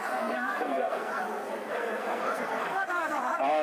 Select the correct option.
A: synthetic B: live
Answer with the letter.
A